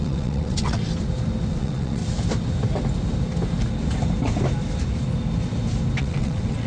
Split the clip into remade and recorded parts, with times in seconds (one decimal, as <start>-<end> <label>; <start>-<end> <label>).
0.0-0.8 remade; 0.8-1.5 recorded; 1.5-2.0 remade; 2.0-6.0 recorded; 6.0-6.7 remade

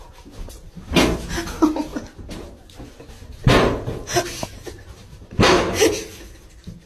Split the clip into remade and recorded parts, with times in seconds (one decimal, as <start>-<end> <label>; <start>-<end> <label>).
0.0-6.9 recorded

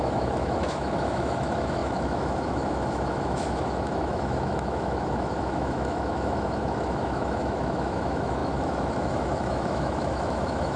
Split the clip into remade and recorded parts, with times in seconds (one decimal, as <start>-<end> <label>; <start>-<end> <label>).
0.0-10.8 remade

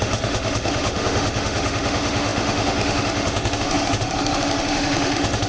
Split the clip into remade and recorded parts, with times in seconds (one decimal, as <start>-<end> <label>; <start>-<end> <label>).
0.0-5.5 remade

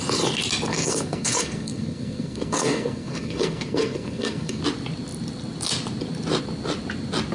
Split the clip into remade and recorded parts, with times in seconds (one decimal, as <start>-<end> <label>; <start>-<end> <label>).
0.0-0.7 recorded; 0.7-4.6 remade; 4.6-7.3 recorded

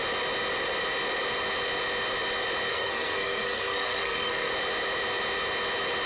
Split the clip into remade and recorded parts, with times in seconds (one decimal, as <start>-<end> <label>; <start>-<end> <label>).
0.0-2.7 recorded; 2.7-4.5 remade; 4.5-6.1 recorded

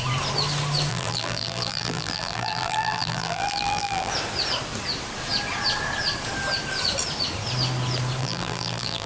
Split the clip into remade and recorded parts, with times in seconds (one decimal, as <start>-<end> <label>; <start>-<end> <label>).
0.0-0.9 recorded; 0.9-4.1 remade; 4.1-8.2 recorded; 8.2-9.1 remade

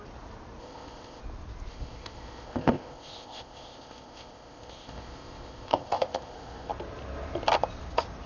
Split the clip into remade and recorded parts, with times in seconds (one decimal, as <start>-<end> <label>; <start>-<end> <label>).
0.0-0.6 recorded; 0.6-1.2 remade; 1.2-1.7 recorded; 1.7-6.7 remade; 6.7-8.3 recorded